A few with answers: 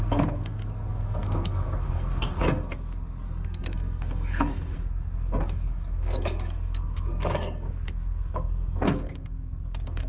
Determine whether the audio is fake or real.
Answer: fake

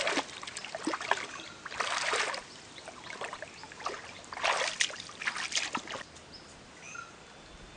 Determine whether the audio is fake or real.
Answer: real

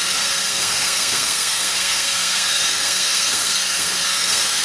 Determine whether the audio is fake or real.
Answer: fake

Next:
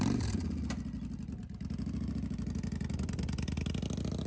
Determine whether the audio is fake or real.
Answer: real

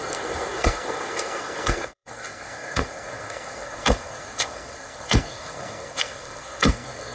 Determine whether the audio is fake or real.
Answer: fake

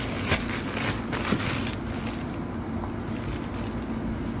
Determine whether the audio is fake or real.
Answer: real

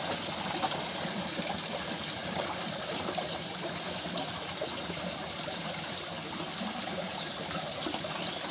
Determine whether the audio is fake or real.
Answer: real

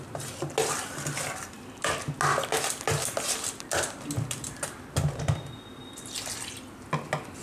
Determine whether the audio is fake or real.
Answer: real